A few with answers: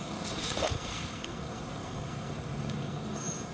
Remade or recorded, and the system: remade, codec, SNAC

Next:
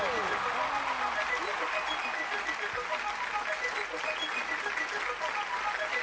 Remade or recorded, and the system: recorded